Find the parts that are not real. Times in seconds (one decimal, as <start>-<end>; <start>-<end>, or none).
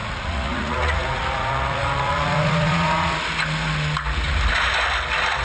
0.0-3.2